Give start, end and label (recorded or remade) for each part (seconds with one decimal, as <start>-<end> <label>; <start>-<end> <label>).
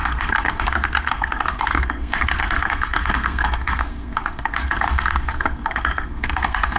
0.0-6.8 remade